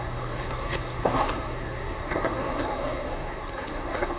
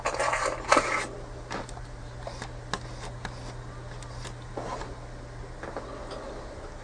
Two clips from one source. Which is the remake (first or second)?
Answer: first